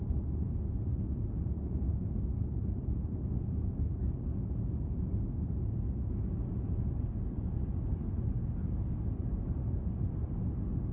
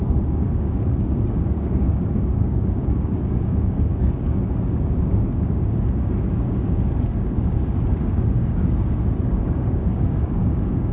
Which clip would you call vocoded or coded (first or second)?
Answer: second